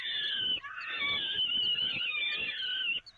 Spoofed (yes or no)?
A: no